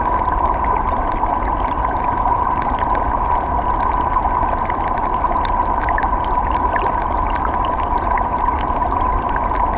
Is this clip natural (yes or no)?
yes